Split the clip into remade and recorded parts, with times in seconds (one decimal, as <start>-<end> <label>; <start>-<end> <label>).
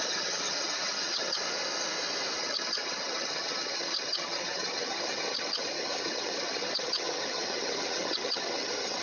0.0-1.4 remade; 1.4-2.4 recorded; 2.4-9.0 remade